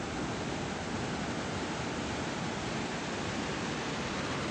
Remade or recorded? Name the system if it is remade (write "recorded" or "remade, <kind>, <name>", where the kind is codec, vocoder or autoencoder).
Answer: recorded